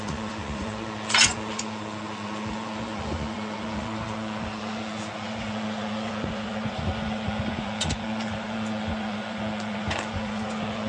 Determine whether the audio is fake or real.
fake